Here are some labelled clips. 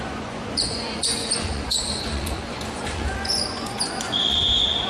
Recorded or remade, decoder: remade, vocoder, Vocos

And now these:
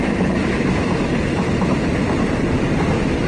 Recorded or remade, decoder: recorded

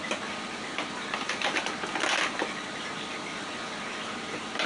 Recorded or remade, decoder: recorded